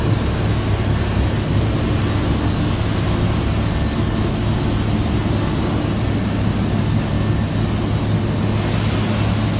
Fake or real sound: real